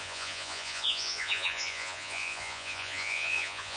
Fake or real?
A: fake